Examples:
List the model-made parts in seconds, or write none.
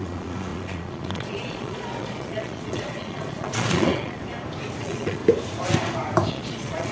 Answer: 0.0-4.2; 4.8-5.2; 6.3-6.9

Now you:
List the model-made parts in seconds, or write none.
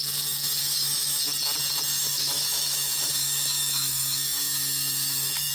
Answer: 0.6-1.2; 2.0-5.5